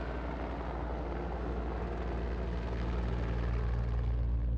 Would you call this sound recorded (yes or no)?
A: yes